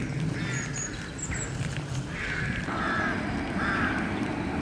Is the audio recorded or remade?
recorded